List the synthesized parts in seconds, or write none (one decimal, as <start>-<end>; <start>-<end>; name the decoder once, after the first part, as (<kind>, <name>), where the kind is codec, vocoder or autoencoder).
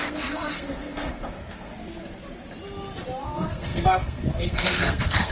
0.0-1.7 (codec, SNAC); 3.2-5.3